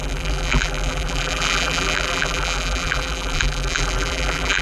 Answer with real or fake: fake